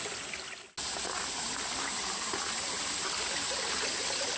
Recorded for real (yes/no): yes